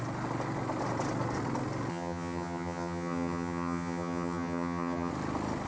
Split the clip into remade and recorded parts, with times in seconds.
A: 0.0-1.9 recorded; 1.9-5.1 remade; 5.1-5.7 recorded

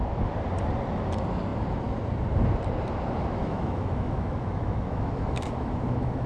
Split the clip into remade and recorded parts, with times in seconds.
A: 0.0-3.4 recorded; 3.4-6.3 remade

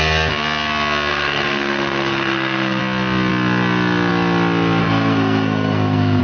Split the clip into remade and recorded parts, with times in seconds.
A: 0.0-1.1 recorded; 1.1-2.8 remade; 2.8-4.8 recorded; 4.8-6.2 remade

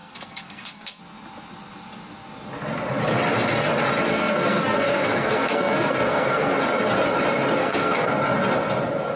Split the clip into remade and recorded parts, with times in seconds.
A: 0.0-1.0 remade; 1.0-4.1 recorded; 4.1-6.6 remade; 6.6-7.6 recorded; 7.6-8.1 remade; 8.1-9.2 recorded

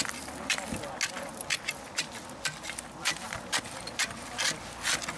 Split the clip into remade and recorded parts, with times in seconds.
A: 0.0-5.2 recorded

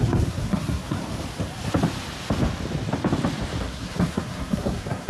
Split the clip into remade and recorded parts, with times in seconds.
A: 0.0-1.0 remade; 1.0-3.6 recorded; 3.6-5.1 remade

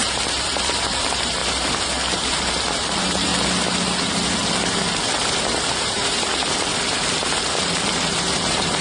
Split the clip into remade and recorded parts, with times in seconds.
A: 0.0-1.4 remade; 1.4-2.5 recorded; 2.5-3.3 remade; 3.3-5.7 recorded; 5.7-6.7 remade; 6.7-7.6 recorded; 7.6-8.8 remade